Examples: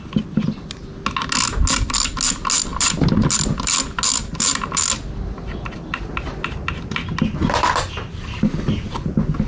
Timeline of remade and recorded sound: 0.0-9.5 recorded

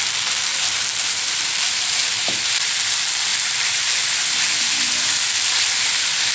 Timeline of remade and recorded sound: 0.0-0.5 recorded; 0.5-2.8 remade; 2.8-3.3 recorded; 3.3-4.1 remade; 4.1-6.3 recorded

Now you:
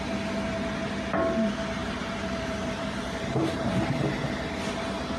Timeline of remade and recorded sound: 0.0-1.8 recorded; 1.8-3.7 remade; 3.7-5.2 recorded

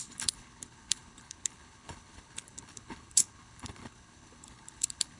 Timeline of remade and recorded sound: 0.0-5.2 remade

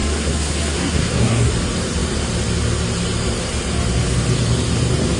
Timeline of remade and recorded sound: 0.0-1.5 remade; 1.5-5.2 recorded